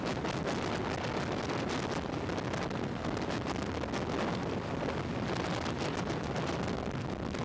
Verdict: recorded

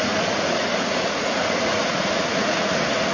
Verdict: remade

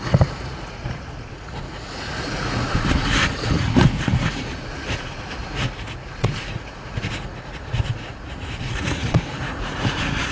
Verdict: remade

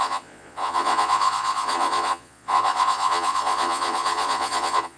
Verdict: remade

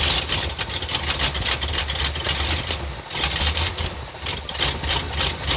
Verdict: recorded